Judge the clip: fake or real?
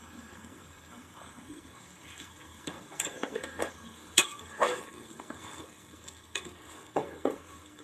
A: fake